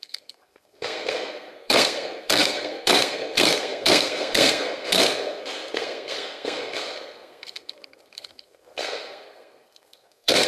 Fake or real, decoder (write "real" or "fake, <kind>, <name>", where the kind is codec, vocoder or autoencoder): fake, codec, SNAC